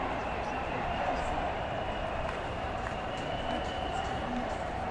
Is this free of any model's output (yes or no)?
no